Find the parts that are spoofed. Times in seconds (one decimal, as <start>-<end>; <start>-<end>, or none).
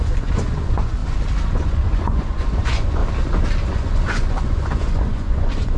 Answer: 0.0-1.0; 1.5-3.0; 3.7-5.8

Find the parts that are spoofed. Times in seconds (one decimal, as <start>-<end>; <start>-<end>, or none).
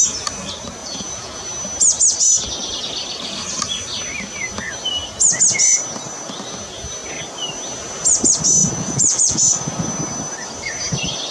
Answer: 0.8-1.4; 8.6-9.4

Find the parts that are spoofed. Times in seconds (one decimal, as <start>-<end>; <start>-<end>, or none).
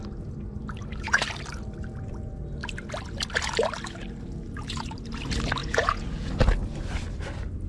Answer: 5.6-6.3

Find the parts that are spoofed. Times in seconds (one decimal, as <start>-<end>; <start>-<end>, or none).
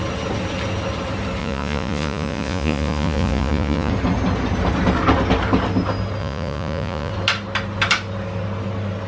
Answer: 1.4-3.9; 6.2-7.1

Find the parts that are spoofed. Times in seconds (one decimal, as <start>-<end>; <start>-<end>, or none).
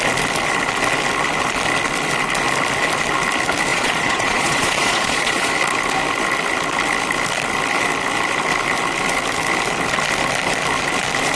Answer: 3.7-5.5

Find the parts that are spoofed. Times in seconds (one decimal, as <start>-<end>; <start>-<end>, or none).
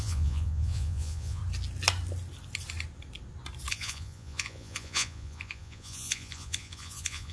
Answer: 0.0-1.4; 3.7-7.3